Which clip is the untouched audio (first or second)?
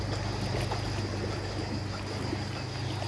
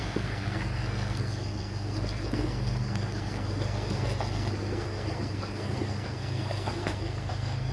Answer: first